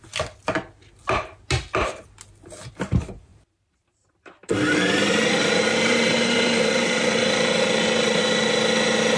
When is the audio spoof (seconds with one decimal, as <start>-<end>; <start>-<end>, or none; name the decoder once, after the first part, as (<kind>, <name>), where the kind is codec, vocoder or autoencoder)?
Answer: 3.3-8.2 (vocoder, BigVGAN v2)